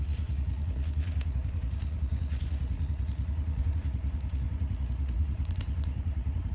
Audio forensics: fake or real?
fake